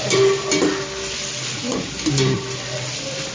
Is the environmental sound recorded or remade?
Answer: recorded